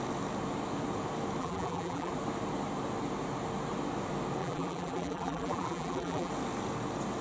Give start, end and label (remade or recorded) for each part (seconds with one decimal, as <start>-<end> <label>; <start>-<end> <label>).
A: 0.0-1.4 recorded; 1.4-2.1 remade; 2.1-4.4 recorded; 4.4-6.3 remade; 6.3-7.2 recorded